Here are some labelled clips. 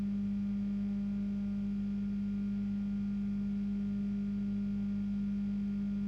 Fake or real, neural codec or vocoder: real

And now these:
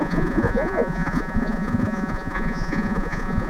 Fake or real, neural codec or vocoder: fake, vocoder, Vocos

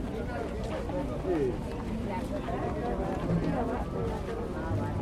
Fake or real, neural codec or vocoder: real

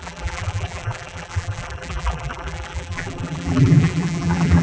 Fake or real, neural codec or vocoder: fake, vocoder, BigVGAN v2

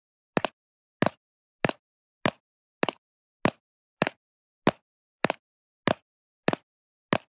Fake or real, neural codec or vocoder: real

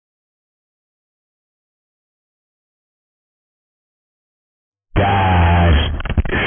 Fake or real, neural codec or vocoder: real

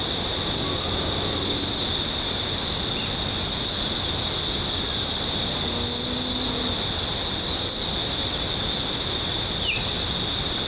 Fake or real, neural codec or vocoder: real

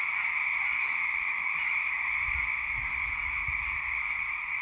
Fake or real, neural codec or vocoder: real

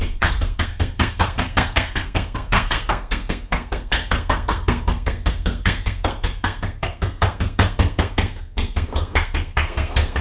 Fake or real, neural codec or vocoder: fake, codec, SNAC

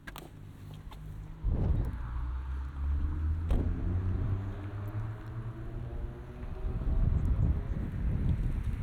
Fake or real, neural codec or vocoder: real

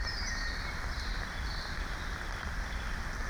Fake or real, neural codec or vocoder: fake, vocoder, BigVGAN v2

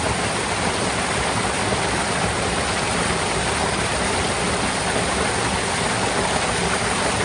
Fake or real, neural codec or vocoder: real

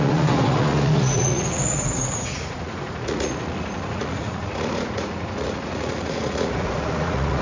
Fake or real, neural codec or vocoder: fake, vocoder, Vocos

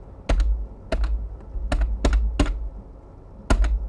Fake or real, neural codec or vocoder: real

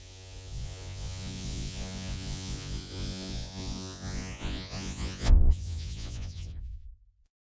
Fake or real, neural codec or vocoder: fake, vocoder, Vocos